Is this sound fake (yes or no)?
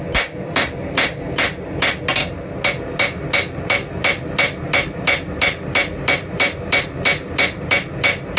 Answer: no